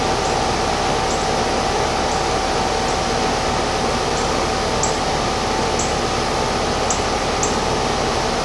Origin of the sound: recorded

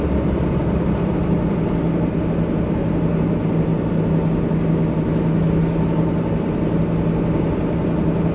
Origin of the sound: recorded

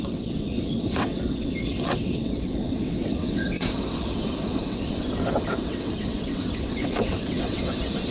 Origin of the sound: remade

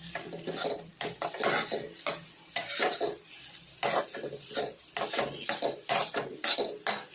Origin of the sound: recorded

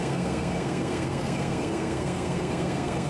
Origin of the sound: remade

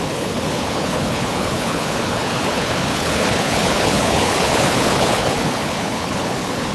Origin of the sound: remade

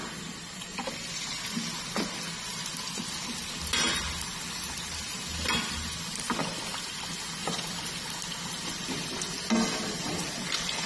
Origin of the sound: recorded